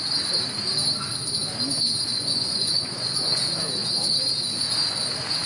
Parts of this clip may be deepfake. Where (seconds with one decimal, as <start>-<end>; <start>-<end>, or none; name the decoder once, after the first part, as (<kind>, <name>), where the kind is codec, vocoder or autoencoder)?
2.1-3.4 (vocoder, Vocos)